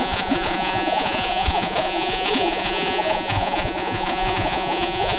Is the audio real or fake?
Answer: fake